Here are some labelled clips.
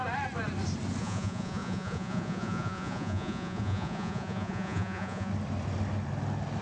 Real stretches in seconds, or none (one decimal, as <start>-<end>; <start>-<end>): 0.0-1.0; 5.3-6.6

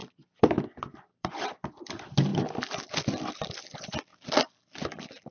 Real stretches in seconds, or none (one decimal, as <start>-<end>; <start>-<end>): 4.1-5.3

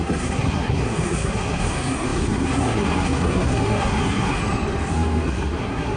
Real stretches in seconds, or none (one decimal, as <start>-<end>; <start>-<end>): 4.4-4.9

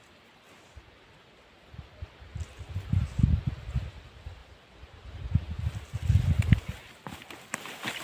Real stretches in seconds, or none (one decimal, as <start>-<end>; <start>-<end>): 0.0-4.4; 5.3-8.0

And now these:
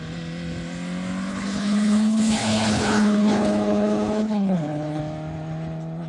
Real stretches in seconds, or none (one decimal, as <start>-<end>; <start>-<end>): 0.0-1.3; 5.0-6.1